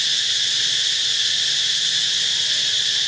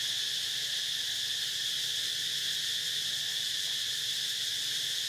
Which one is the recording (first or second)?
second